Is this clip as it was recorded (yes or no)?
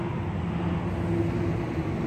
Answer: yes